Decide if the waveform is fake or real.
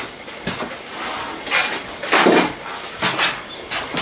real